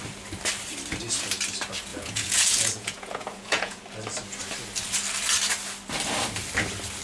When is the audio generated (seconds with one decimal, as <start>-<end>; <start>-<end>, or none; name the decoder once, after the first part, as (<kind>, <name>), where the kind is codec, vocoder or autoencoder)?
1.9-3.8 (vocoder, Vocos)